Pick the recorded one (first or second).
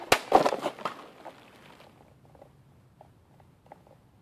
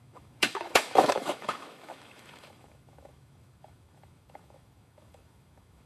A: first